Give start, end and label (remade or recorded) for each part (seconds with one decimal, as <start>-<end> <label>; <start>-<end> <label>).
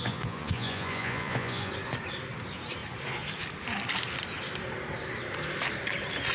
0.0-1.7 remade; 1.7-6.3 recorded